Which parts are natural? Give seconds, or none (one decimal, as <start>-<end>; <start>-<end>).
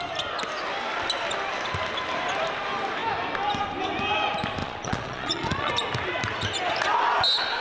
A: 0.0-4.6; 5.7-7.6